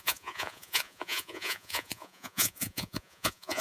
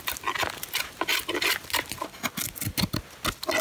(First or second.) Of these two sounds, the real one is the second